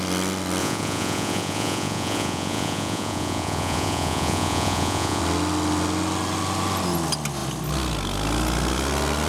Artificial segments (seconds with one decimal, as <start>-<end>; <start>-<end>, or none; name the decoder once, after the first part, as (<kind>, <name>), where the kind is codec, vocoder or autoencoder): 0.6-5.2 (vocoder, Vocos)